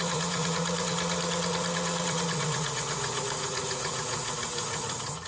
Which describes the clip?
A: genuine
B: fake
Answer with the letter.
B